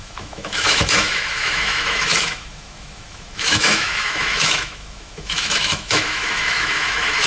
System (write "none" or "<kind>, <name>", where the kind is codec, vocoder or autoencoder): autoencoder, DAC-VAE